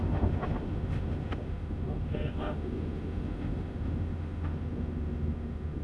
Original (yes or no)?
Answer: no